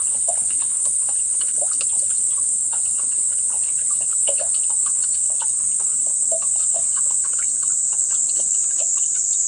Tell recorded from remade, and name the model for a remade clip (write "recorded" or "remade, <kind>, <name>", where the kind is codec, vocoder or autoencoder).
remade, codec, HILCodec